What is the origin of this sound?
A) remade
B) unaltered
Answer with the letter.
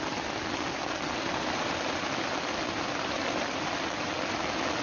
B